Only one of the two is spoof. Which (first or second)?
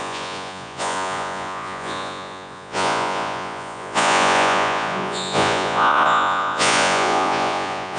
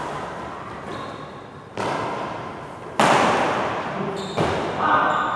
first